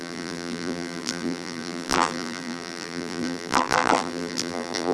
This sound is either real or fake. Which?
fake